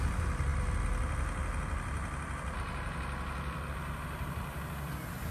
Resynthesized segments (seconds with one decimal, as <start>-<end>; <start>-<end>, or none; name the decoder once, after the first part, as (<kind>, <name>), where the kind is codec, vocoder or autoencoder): none